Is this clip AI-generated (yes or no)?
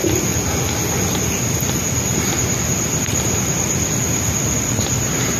no